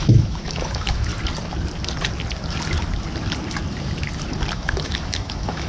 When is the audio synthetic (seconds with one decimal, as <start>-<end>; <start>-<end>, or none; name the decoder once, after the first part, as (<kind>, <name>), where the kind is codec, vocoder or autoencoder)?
0.0-1.1 (autoencoder, DAC-VAE); 4.5-5.7